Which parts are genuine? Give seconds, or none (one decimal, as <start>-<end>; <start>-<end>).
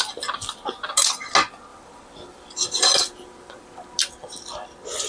0.0-1.7; 4.0-5.1